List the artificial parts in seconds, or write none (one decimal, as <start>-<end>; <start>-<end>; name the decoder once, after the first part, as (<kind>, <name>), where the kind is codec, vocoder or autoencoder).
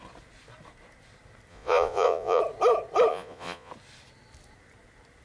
1.5-2.4 (vocoder, Vocos); 3.1-3.7